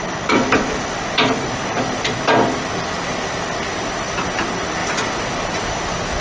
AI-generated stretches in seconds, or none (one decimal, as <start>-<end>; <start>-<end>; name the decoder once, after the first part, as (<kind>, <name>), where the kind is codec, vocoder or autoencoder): none